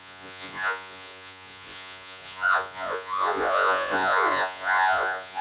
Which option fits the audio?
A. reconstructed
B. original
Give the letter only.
A